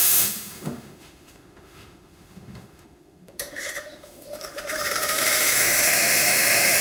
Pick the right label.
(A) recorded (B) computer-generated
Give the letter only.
B